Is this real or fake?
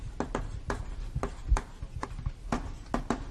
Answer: real